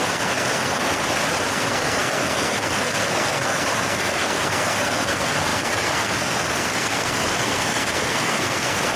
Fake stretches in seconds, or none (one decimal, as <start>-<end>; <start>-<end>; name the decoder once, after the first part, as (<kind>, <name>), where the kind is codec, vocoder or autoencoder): 0.0-1.0 (codec, SNAC); 1.5-9.0